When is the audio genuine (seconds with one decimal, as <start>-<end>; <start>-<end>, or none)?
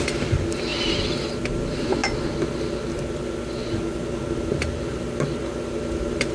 0.7-1.3; 2.0-5.8